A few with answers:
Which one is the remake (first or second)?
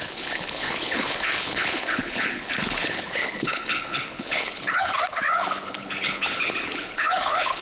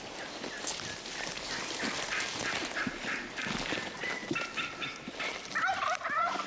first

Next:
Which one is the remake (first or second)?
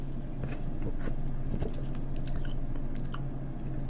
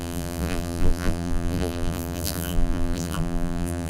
second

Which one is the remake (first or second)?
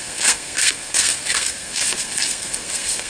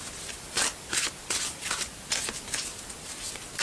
first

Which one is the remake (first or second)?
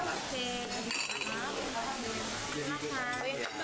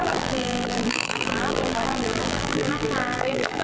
second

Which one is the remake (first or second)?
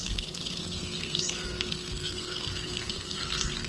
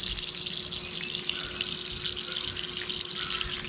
first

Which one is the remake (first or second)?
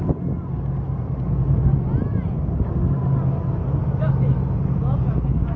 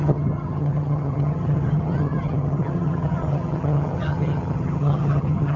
second